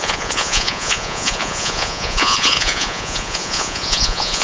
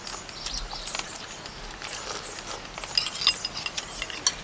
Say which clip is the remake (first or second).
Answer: first